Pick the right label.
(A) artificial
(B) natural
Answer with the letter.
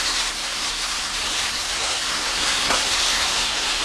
A